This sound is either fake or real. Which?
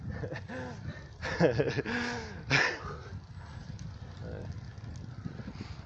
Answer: real